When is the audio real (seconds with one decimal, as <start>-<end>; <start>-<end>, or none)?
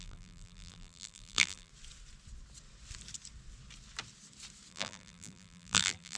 1.7-4.7